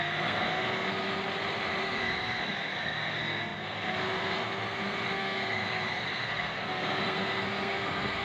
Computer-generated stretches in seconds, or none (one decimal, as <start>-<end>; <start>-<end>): 0.0-1.2; 1.8-8.2